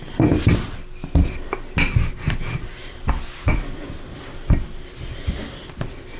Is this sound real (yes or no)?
yes